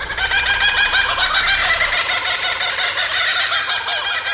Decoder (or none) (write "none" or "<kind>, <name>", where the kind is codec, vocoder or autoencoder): none